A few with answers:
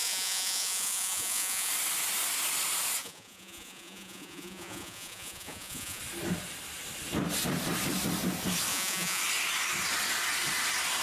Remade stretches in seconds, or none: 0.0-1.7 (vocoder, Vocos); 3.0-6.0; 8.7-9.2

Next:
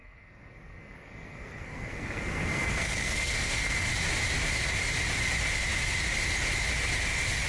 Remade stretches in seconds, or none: 0.0-3.9 (codec, SNAC)

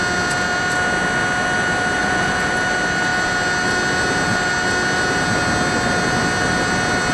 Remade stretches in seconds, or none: 2.0-2.5 (vocoder, Vocos)

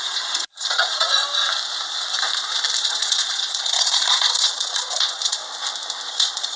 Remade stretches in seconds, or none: 0.0-1.2 (vocoder, Vocos); 2.8-5.4; 6.1-6.6

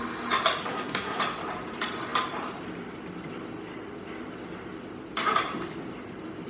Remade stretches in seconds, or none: 0.6-1.2 (codec, SNAC)

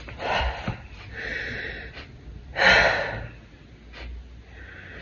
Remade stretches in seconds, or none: none

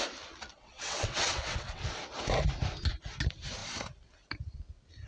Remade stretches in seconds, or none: 0.5-2.0 (vocoder, WaveNeXt)

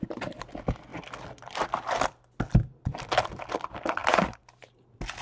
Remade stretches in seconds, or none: 0.9-2.4 (vocoder, BigVGAN v2); 4.0-4.6